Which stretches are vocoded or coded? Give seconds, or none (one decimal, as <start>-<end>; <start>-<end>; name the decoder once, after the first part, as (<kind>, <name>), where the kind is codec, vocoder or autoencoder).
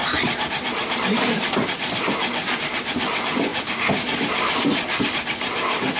0.0-2.5 (vocoder, BigVGAN v2); 3.5-5.1